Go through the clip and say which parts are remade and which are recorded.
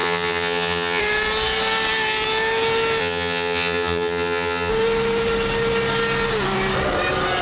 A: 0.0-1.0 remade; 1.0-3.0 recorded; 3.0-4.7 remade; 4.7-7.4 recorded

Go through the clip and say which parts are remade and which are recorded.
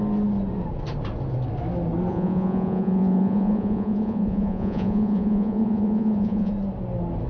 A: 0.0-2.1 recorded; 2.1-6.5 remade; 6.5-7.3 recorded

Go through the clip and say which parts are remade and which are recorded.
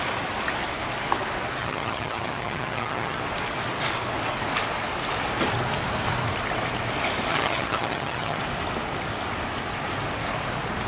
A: 0.0-1.6 recorded; 1.6-3.2 remade; 3.2-7.3 recorded; 7.3-8.4 remade; 8.4-10.9 recorded